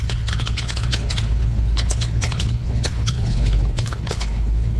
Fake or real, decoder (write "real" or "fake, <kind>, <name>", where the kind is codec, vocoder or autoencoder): fake, codec, HILCodec